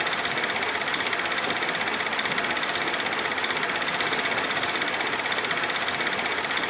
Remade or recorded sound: recorded